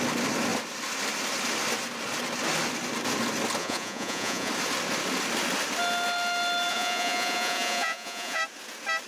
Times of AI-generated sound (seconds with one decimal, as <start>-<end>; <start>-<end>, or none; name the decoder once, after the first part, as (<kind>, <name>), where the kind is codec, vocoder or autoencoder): 3.6-4.5 (vocoder, Vocos); 6.7-8.4